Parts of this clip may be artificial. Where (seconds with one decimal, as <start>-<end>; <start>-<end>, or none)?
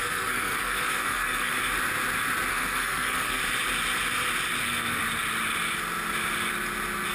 0.0-1.5; 2.5-3.4; 4.6-5.0